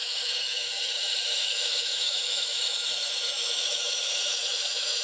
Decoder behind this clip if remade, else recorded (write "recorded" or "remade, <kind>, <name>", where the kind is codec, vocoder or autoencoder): remade, autoencoder, DAC-VAE